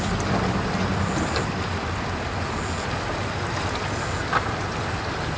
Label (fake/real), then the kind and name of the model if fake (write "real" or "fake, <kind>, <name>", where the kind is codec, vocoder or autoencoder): real